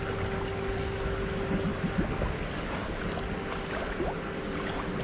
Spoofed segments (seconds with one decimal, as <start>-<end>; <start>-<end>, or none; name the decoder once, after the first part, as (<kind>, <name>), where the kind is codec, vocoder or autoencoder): none